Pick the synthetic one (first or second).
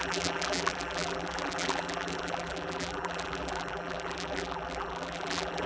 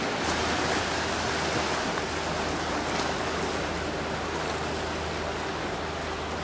first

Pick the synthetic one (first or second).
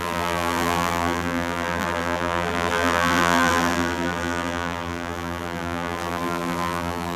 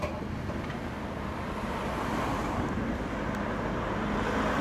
first